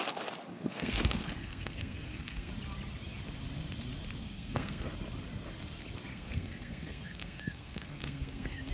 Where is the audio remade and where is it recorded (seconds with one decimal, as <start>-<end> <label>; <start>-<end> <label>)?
0.0-0.5 recorded; 0.5-2.5 remade; 2.5-4.2 recorded; 4.2-4.9 remade; 4.9-6.1 recorded; 6.1-8.7 remade